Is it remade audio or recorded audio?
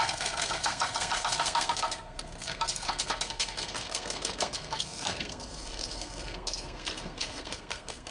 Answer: remade